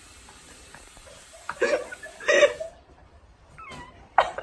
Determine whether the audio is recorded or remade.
remade